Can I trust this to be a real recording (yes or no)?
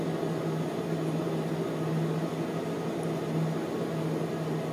yes